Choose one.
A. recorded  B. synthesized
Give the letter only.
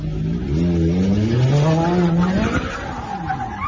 A